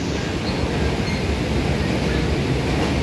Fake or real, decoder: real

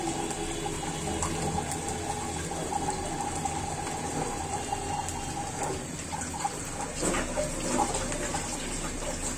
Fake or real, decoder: real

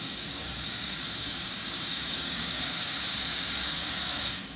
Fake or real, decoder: fake, codec, DAC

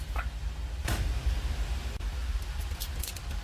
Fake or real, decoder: real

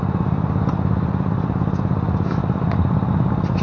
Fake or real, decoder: real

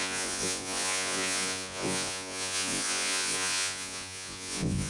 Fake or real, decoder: fake, vocoder, Vocos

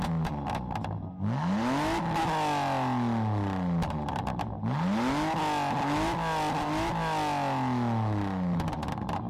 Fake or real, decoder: real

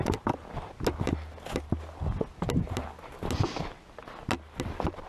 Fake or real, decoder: real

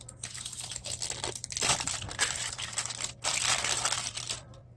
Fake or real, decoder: fake, vocoder, BigVGAN v2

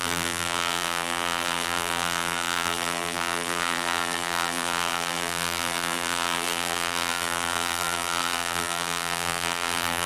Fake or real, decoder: fake, vocoder, BigVGAN v2